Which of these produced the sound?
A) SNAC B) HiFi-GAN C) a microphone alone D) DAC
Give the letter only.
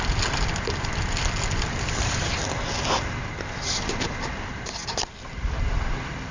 C